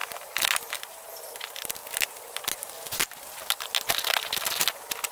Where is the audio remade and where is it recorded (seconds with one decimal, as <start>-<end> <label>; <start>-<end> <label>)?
0.0-5.1 recorded